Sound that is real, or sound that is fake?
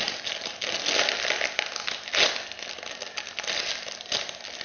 real